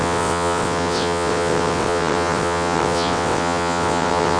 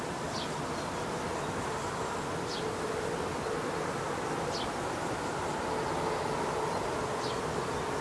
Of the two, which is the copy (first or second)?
first